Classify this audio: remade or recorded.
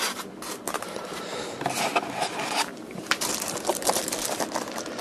recorded